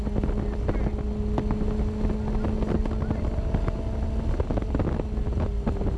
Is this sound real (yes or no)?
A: yes